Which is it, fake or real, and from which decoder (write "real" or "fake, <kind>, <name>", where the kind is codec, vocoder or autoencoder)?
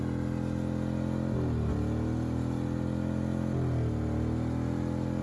real